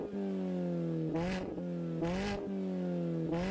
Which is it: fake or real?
real